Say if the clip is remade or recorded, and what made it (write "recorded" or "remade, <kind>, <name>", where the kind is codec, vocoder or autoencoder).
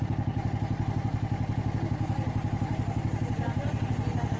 recorded